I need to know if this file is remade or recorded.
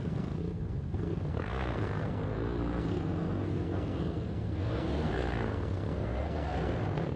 remade